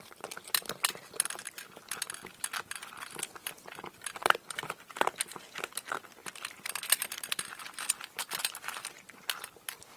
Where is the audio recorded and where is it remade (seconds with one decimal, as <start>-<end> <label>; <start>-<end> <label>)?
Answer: 0.0-10.0 recorded